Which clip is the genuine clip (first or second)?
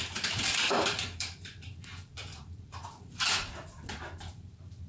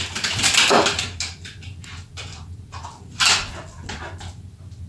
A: second